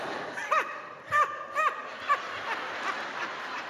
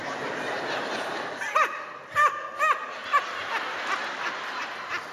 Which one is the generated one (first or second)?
first